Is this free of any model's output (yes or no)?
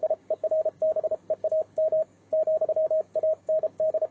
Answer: no